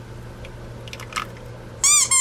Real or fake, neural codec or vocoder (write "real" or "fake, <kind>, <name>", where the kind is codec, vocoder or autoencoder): real